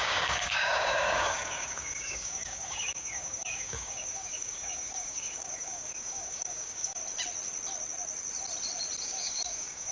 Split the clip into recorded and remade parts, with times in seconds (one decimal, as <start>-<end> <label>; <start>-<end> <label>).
0.0-7.0 remade; 7.0-9.0 recorded; 9.0-9.9 remade